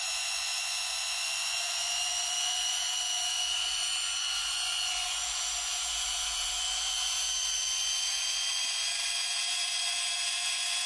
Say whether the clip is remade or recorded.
remade